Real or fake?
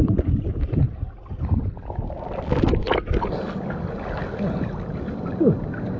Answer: real